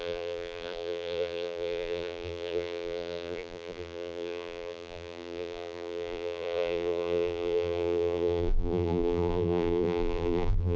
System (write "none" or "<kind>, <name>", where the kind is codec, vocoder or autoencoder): vocoder, BigVGAN v2